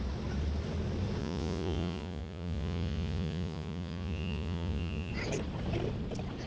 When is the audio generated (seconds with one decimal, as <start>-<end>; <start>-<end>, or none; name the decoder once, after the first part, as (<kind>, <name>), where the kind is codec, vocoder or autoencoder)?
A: 1.2-5.1 (vocoder, Vocos)